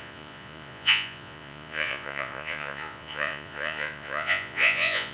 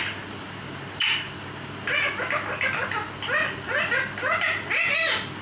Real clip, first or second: second